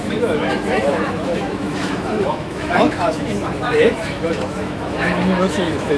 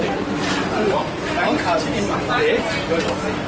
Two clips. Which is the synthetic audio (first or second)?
first